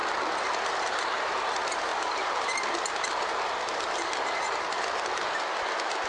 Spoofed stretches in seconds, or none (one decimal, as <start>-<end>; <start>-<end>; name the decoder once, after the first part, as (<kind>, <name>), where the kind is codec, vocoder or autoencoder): 0.0-1.5 (vocoder, BigVGAN v2); 1.9-4.6